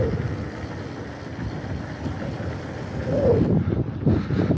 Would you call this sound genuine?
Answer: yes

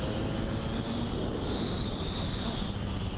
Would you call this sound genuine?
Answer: yes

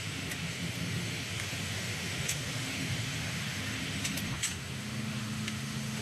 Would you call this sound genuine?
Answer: no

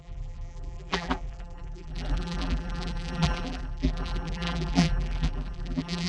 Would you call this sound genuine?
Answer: no